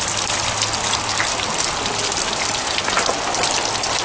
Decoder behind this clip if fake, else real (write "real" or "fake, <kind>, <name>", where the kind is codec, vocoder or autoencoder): real